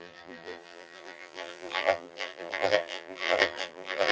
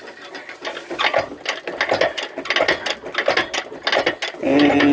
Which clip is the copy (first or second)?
first